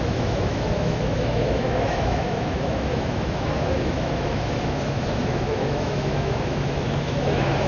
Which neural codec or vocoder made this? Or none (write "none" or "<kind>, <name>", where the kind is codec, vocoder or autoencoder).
autoencoder, DAC-VAE